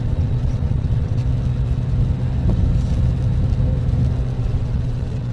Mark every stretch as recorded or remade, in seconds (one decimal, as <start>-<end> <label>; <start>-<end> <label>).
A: 0.0-1.2 remade; 1.2-4.4 recorded; 4.4-5.3 remade